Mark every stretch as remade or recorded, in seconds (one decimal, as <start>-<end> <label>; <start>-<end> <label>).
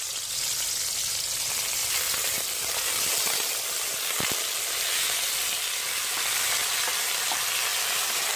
0.0-8.4 recorded